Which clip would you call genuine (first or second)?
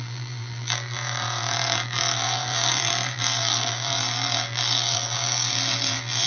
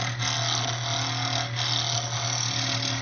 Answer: second